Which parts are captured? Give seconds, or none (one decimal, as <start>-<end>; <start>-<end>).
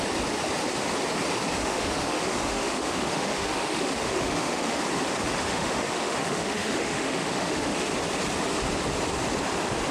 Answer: 0.0-1.6; 4.8-5.5; 7.9-9.9